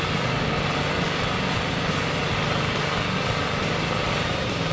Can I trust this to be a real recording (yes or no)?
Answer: yes